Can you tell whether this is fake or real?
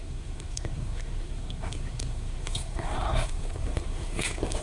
fake